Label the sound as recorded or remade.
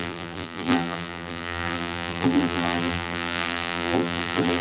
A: remade